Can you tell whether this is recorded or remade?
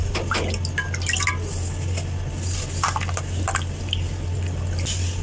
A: recorded